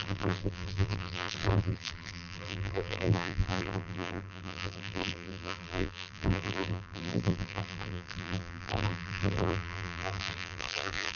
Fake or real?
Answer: fake